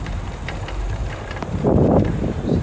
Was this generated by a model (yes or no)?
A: yes